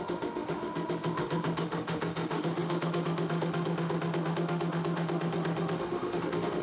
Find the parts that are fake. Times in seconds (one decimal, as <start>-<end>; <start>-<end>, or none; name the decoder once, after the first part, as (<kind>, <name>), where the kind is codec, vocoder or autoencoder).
0.0-6.6 (autoencoder, DAC-VAE)